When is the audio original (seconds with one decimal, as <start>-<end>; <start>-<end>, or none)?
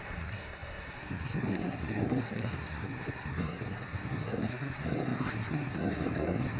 none